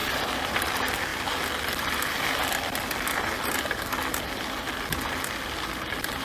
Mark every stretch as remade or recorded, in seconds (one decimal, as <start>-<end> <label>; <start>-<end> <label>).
0.0-6.2 recorded

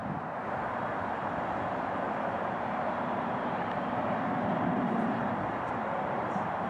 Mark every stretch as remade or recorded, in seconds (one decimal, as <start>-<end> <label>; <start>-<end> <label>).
0.0-0.6 recorded; 0.6-6.7 remade